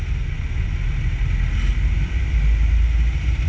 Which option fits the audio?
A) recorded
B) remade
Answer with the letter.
A